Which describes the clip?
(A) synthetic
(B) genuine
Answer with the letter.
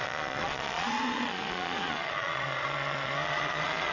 A